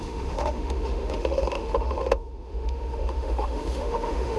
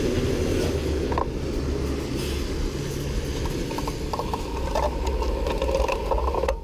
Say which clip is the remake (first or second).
first